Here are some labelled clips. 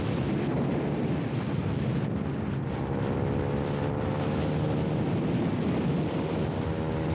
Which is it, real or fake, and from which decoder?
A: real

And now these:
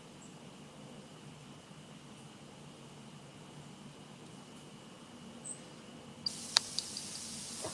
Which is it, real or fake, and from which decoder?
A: fake, vocoder, BigVGAN v2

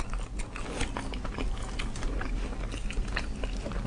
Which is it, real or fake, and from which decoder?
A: real